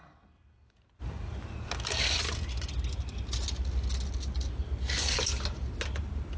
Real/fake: real